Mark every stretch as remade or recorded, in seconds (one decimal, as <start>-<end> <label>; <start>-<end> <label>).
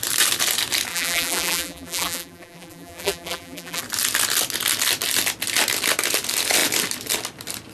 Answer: 0.0-0.9 recorded; 0.9-3.8 remade; 3.8-7.7 recorded